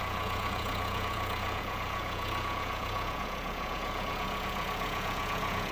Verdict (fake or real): fake